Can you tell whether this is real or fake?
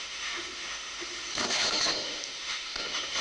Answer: fake